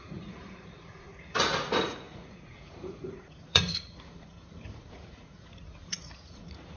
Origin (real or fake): fake